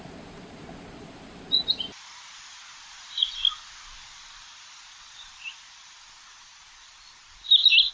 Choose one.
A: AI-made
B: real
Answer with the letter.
B